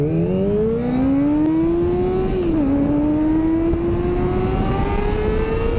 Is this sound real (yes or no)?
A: yes